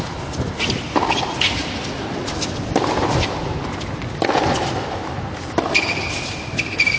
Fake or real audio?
real